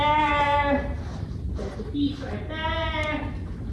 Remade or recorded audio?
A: recorded